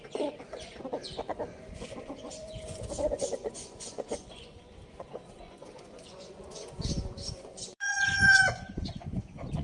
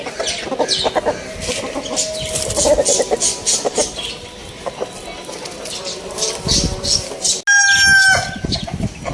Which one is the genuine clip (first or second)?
second